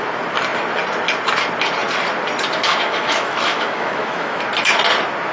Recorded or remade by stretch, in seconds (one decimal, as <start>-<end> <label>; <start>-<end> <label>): 0.0-2.6 recorded; 2.6-4.4 remade; 4.4-5.3 recorded